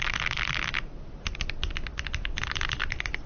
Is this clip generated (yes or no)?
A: no